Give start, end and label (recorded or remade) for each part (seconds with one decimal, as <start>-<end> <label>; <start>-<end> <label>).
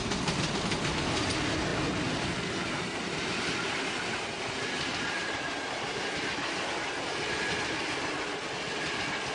0.0-9.3 recorded